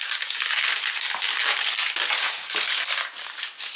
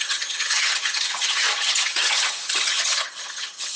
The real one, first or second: first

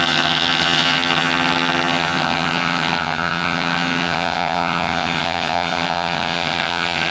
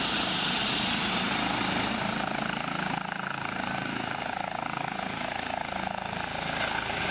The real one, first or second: second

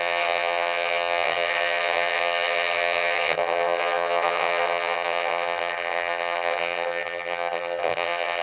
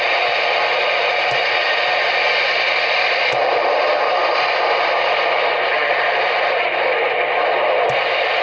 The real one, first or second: second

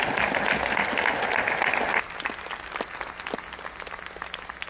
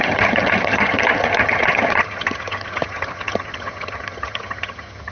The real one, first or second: first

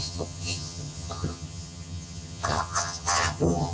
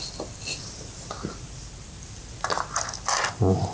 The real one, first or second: second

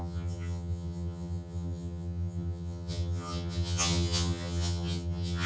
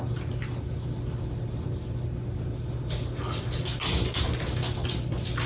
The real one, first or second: second